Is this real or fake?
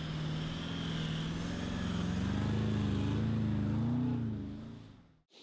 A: real